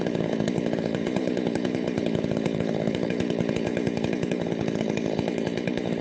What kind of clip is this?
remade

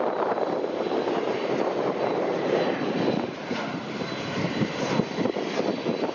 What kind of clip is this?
remade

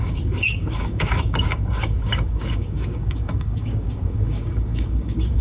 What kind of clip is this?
remade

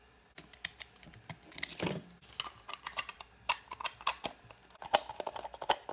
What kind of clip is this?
recorded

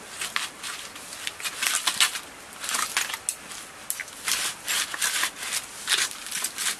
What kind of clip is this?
recorded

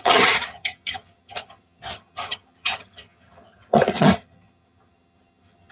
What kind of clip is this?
remade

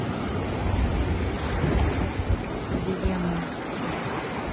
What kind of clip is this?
recorded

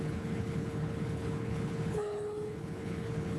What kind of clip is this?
remade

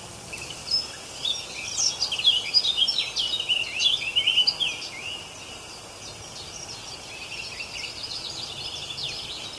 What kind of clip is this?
recorded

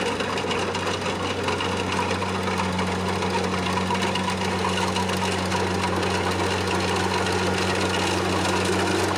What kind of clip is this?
recorded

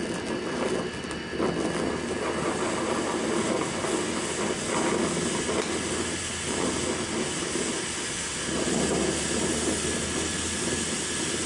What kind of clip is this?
recorded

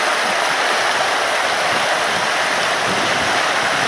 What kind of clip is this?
recorded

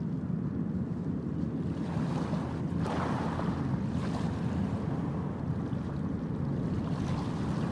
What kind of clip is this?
recorded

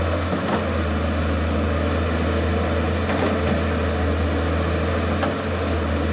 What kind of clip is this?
recorded